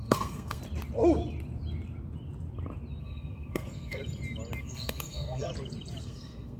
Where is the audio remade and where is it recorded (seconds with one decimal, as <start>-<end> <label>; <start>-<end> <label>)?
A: 0.0-0.6 remade; 0.6-3.0 recorded; 3.0-4.0 remade; 4.0-4.6 recorded; 4.6-5.5 remade; 5.5-6.0 recorded; 6.0-6.6 remade